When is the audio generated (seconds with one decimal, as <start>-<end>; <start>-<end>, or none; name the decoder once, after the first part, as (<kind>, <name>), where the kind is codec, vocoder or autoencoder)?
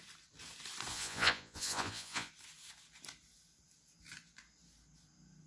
0.9-2.3 (vocoder, Vocos)